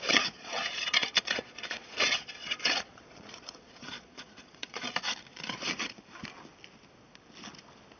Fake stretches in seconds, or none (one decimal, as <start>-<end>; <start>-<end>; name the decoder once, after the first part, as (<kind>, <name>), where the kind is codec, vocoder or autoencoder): 0.0-4.8 (vocoder, Vocos); 5.3-6.0